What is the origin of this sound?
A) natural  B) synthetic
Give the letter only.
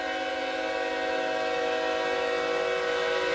A